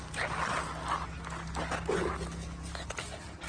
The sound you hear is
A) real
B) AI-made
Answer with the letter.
A